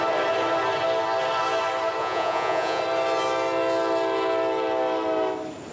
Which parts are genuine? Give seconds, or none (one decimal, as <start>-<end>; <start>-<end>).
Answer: 0.0-2.0; 2.8-5.7